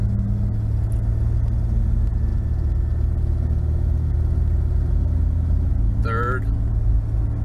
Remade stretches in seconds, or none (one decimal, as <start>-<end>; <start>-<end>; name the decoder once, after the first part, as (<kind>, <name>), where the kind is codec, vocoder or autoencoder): none